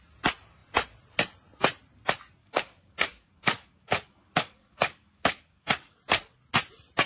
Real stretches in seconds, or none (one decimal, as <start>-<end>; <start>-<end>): 0.0-2.4; 6.0-7.1